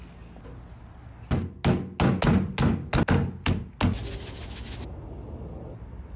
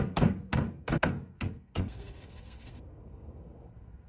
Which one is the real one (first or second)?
first